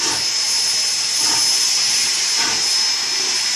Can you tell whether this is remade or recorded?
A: recorded